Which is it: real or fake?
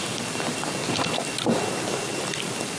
real